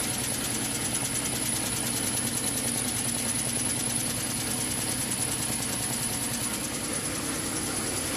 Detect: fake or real real